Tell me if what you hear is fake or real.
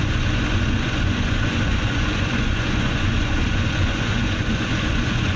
fake